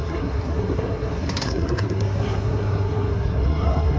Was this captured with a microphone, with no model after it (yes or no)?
no